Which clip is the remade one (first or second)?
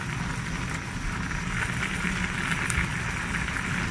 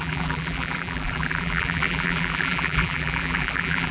second